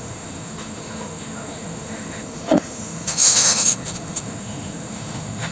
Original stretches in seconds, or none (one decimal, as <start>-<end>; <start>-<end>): none